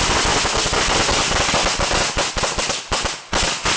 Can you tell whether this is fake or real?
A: real